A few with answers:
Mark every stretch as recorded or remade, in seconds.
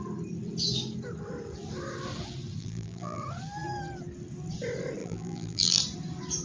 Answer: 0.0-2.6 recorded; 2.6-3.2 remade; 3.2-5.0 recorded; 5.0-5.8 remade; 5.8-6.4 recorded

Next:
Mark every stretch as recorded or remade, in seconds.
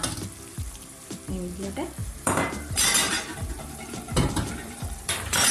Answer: 0.0-0.5 recorded; 0.5-1.3 remade; 1.3-2.0 recorded; 2.0-5.5 remade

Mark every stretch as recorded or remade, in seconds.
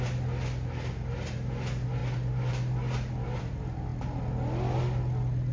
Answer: 0.0-5.5 recorded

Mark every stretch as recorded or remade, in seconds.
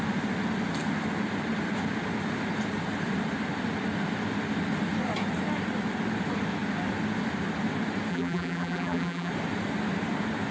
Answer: 0.0-8.1 recorded; 8.1-9.3 remade; 9.3-10.5 recorded